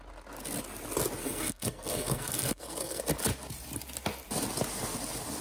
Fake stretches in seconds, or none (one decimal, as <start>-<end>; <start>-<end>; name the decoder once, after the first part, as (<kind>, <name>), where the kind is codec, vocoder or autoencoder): 1.2-3.0 (codec, SNAC)